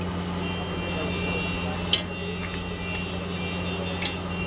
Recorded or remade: recorded